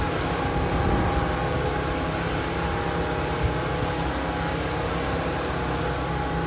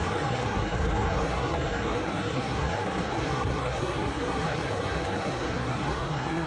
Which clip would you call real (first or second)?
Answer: first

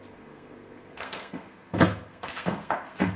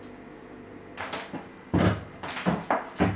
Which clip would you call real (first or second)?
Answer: second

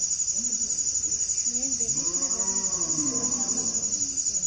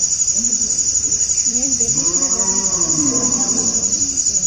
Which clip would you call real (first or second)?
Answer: first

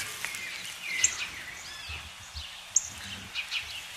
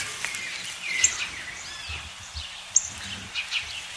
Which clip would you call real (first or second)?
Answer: first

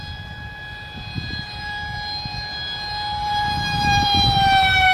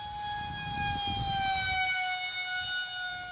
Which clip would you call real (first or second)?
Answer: second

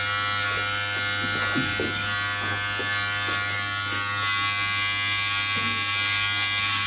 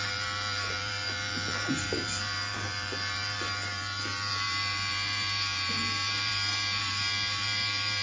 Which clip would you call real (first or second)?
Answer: first